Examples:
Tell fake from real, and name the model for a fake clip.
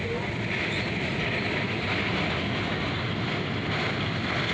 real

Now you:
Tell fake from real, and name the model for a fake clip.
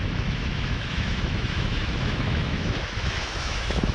fake, autoencoder, DAC-VAE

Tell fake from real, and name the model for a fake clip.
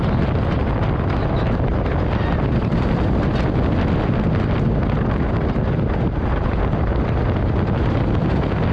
real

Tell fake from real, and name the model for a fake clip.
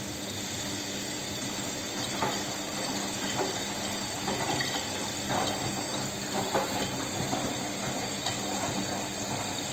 real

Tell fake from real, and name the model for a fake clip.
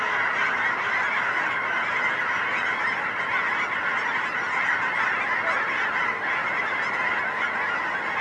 real